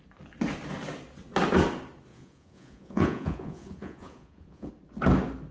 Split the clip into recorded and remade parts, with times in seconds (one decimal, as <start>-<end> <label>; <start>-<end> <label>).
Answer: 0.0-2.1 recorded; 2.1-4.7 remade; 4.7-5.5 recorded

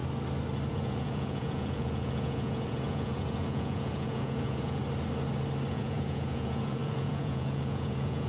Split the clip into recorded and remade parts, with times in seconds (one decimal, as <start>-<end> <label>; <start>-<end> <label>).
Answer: 0.0-0.7 recorded; 0.7-4.8 remade; 4.8-5.7 recorded; 5.7-8.3 remade

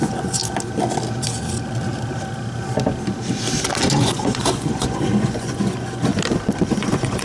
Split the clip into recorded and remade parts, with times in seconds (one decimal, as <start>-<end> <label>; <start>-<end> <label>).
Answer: 0.0-0.4 remade; 0.4-4.0 recorded; 4.0-6.1 remade; 6.1-6.7 recorded; 6.7-7.2 remade